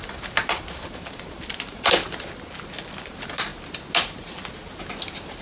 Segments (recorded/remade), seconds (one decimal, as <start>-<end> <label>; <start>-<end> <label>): 0.0-2.0 remade; 2.0-5.4 recorded